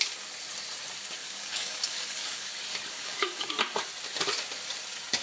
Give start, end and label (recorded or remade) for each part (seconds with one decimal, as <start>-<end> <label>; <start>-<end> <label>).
0.0-1.2 recorded; 1.2-3.5 remade; 3.5-5.2 recorded